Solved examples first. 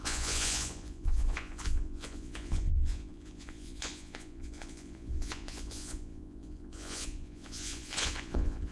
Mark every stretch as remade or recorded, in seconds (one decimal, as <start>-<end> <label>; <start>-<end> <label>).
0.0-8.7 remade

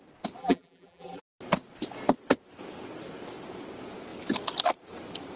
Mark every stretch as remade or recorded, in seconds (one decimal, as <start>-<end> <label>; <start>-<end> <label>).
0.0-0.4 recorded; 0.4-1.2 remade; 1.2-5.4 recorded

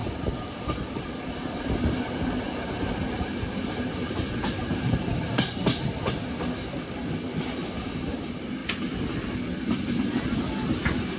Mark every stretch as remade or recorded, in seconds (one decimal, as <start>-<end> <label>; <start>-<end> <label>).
0.0-11.2 recorded

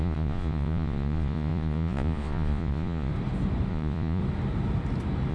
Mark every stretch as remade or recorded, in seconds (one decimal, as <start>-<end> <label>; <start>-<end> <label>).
0.0-3.1 remade; 3.1-3.7 recorded; 3.7-4.2 remade; 4.2-5.3 recorded

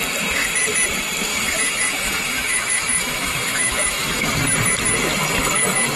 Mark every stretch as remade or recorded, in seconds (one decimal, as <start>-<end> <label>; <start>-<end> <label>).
0.0-1.3 recorded; 1.3-4.3 remade; 4.3-6.0 recorded

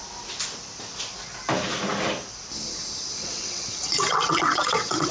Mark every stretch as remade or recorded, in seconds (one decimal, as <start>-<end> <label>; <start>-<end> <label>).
0.0-3.2 recorded; 3.2-5.1 remade

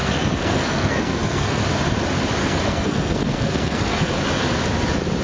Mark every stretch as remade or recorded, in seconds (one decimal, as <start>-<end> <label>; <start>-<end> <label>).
0.0-1.6 remade; 1.6-2.4 recorded; 2.4-4.1 remade; 4.1-5.2 recorded